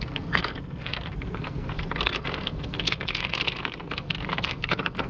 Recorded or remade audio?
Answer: remade